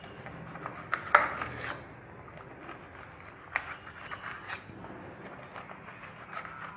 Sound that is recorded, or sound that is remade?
recorded